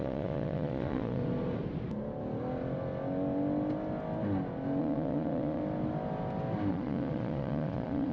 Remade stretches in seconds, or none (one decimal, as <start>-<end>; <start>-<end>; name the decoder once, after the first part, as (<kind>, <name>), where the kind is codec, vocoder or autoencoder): 0.0-1.2 (vocoder, Vocos); 4.8-5.6; 6.7-8.1